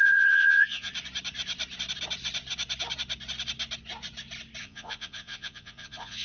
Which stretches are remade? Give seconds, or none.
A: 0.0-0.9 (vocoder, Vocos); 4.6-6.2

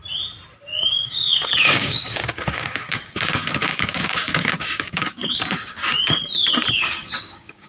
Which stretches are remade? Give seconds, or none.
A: 0.9-5.8 (codec, DAC); 6.7-7.7